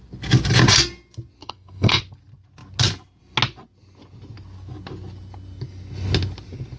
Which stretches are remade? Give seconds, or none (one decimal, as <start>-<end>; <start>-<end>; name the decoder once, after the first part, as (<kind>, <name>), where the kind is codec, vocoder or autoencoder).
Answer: 1.4-2.0 (codec, SNAC)